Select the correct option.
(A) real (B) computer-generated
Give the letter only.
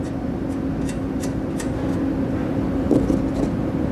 A